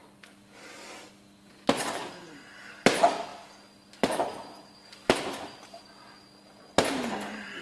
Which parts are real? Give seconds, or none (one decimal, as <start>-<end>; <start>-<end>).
0.0-7.6